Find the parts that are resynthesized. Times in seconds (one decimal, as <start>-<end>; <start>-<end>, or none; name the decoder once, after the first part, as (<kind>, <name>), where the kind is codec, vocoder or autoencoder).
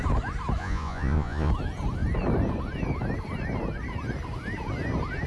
0.6-1.5 (vocoder, Vocos)